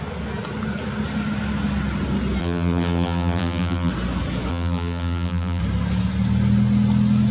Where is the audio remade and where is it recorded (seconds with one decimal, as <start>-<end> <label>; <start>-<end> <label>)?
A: 0.0-2.4 recorded; 2.4-3.9 remade; 3.9-4.5 recorded; 4.5-5.6 remade; 5.6-7.3 recorded